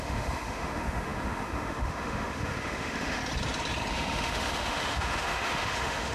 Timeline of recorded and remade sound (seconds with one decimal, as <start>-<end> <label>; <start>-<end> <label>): 0.0-3.2 remade; 3.2-3.9 recorded; 3.9-6.1 remade